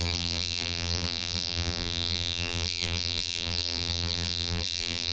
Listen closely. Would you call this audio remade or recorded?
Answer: remade